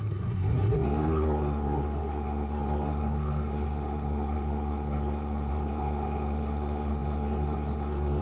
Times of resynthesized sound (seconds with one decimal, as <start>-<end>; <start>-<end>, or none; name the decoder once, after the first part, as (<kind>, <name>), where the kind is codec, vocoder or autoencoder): 0.0-8.2 (codec, SNAC)